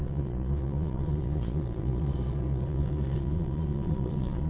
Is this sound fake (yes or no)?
yes